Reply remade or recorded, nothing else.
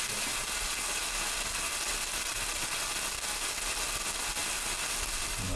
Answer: recorded